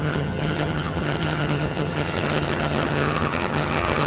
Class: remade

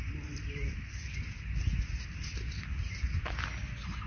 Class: recorded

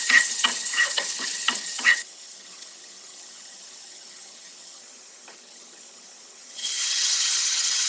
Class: remade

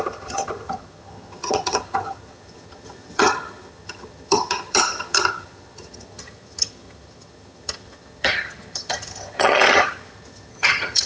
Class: remade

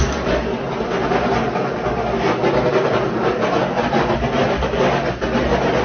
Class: recorded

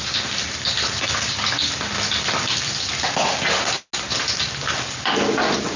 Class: recorded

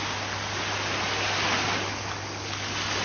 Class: recorded